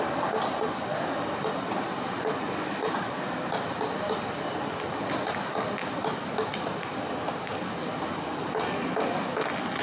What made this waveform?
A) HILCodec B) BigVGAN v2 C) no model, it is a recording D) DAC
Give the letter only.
C